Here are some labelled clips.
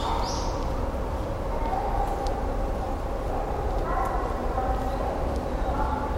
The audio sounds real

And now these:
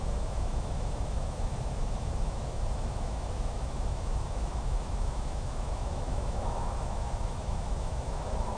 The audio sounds fake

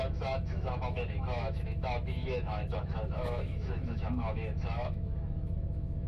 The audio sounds fake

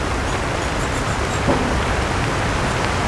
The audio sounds real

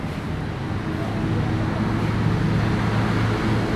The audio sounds real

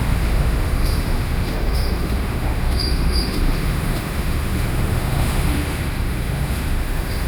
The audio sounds fake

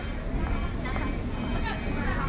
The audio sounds real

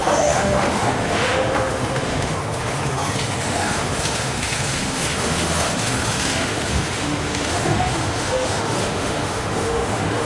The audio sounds fake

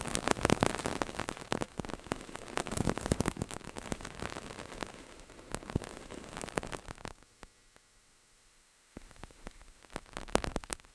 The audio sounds fake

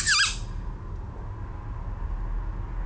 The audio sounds real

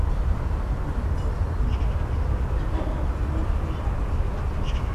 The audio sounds real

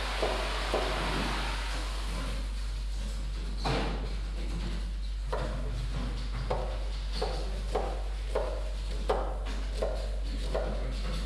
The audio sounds real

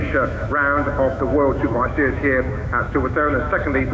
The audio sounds fake